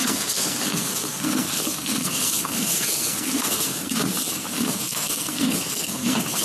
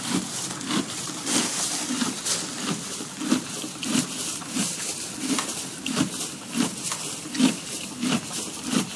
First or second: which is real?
second